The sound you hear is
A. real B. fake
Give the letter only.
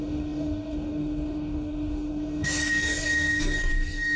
B